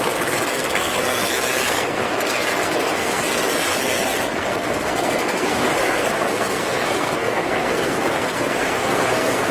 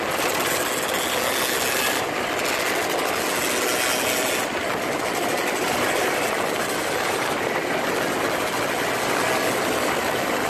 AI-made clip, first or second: first